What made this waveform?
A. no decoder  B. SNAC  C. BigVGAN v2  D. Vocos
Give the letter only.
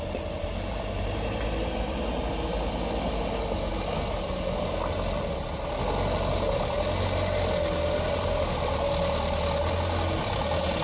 A